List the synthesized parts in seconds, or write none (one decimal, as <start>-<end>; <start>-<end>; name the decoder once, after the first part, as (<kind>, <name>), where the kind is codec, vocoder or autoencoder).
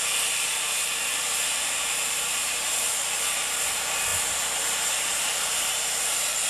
0.0-4.1 (vocoder, BigVGAN v2); 4.9-6.5